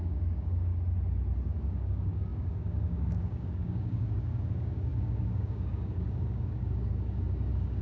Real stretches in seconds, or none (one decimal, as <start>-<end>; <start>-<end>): 0.7-1.6